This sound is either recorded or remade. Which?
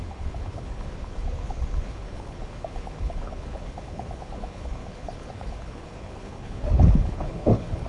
remade